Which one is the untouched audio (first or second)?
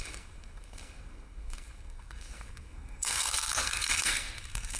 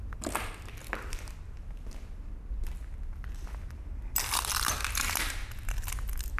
second